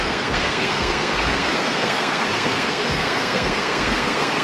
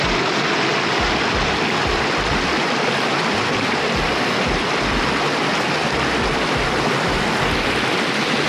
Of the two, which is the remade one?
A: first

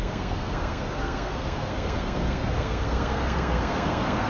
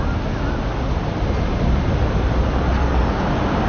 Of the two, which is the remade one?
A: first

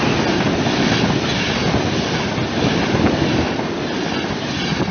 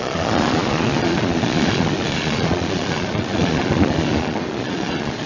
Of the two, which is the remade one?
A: second